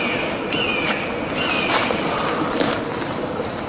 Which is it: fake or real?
real